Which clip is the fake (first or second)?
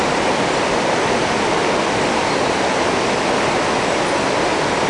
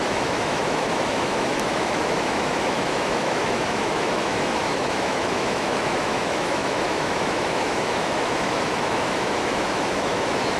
second